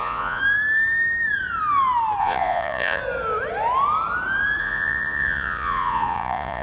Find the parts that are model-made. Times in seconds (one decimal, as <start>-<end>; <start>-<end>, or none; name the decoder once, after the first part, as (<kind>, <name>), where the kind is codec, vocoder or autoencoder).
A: 0.0-0.4 (vocoder, Vocos); 2.2-3.0; 4.6-6.6